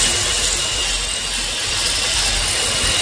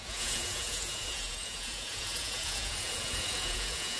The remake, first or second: second